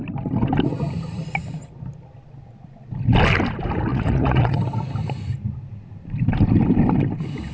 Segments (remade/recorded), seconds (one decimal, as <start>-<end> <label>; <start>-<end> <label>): 0.0-3.9 recorded; 3.9-4.6 remade; 4.6-7.5 recorded